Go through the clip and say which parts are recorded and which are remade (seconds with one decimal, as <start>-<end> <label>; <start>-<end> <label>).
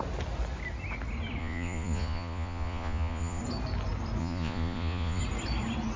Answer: 0.0-1.4 recorded; 1.4-3.4 remade; 3.4-4.2 recorded; 4.2-5.2 remade; 5.2-6.0 recorded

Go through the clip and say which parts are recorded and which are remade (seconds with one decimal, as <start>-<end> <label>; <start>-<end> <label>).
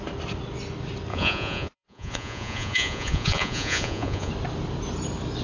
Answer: 0.0-1.1 recorded; 1.1-4.3 remade; 4.3-5.4 recorded